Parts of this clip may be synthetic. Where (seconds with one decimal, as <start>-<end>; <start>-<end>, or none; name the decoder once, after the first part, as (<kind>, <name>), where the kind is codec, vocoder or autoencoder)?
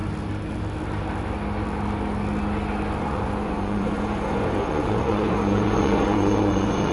3.0-6.9 (vocoder, Vocos)